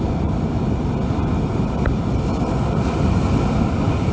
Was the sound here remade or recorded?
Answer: recorded